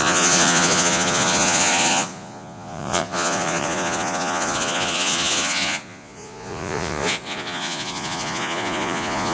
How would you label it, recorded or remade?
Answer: remade